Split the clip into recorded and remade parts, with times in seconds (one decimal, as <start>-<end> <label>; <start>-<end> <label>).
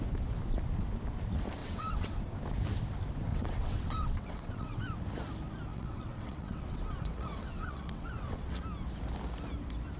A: 0.0-1.6 recorded; 1.6-2.2 remade; 2.2-3.3 recorded; 3.3-4.9 remade; 4.9-5.7 recorded; 5.7-8.6 remade; 8.6-10.0 recorded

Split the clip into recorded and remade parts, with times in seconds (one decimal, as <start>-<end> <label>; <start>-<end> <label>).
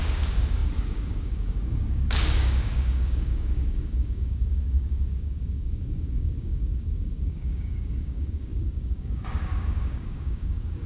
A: 0.0-10.9 remade